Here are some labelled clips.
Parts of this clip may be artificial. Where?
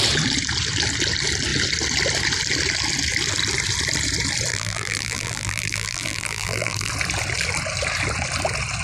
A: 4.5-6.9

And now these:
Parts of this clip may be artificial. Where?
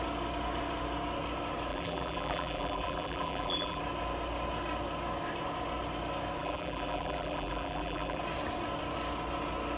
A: 1.7-3.8; 6.4-8.2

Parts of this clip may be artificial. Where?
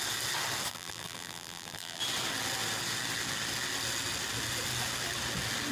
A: 0.7-2.0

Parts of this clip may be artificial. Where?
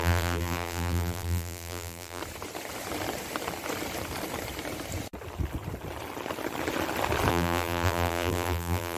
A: 0.0-2.2; 7.3-9.0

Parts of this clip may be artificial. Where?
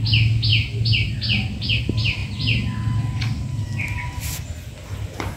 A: none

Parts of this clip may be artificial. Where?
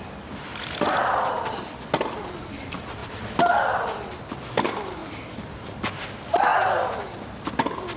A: 3.0-4.2; 6.5-7.0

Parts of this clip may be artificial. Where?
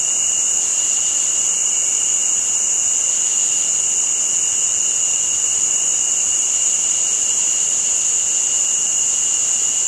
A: 0.7-1.7; 5.5-8.0